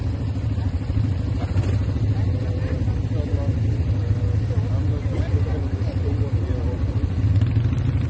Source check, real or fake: real